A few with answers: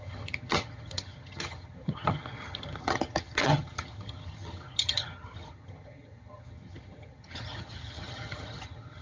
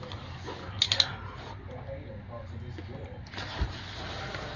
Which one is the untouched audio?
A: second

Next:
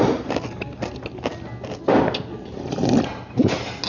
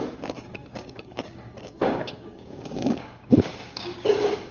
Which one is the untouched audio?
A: first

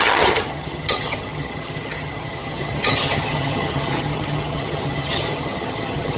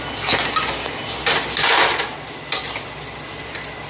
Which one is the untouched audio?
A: second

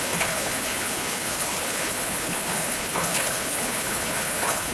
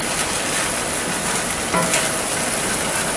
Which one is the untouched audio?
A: second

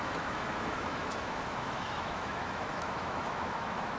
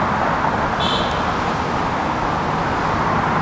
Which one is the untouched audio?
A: second